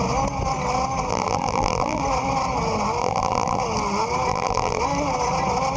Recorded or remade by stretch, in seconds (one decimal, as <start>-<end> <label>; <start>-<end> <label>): 0.0-1.1 recorded; 1.1-2.0 remade; 2.0-3.0 recorded; 3.0-3.6 remade; 3.6-4.3 recorded; 4.3-4.8 remade; 4.8-5.8 recorded